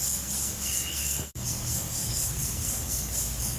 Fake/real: fake